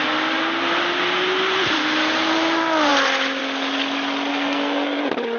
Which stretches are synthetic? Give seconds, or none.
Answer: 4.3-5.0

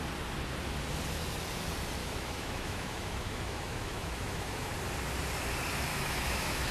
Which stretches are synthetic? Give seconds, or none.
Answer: 2.0-4.7; 5.9-6.7

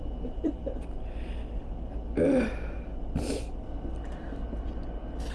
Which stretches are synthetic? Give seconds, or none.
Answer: none

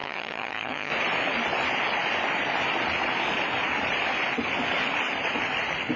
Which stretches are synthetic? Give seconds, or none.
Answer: 0.0-0.9

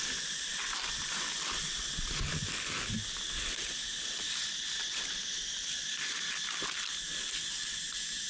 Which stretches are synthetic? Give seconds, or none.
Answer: none

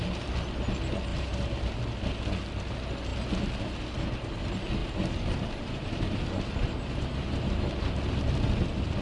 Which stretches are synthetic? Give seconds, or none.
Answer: 1.1-1.8; 4.8-7.9

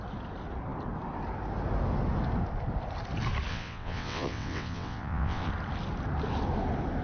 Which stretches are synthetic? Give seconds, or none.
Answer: 3.5-5.5